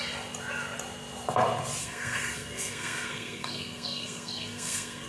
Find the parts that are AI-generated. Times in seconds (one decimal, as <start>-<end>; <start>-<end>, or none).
1.8-5.1